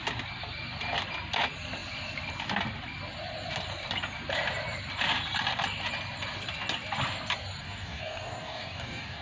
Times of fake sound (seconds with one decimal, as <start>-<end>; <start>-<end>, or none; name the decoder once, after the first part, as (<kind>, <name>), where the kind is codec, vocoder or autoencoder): 7.6-9.2 (codec, DAC)